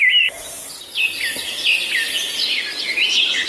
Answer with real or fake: real